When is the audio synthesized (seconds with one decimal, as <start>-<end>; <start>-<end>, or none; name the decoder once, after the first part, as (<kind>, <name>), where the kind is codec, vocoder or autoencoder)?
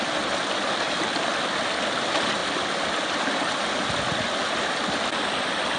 none